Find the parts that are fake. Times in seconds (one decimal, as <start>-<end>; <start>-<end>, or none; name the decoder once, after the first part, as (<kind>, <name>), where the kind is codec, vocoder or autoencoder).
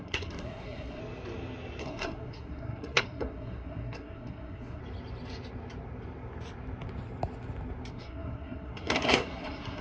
0.0-1.0 (codec, SNAC); 1.8-4.8; 7.9-9.8